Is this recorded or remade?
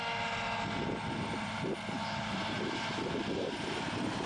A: recorded